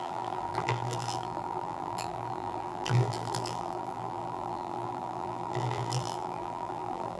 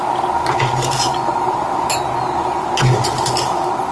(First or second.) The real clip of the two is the second